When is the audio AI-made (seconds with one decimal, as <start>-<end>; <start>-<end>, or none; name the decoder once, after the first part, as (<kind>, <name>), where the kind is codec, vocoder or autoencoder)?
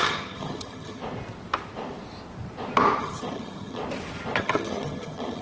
0.0-1.0 (vocoder, HiFi-GAN); 3.0-3.8; 4.4-5.4